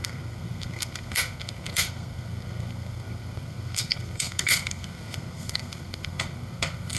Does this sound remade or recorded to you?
remade